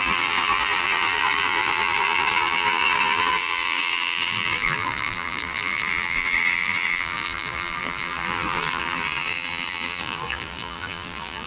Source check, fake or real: fake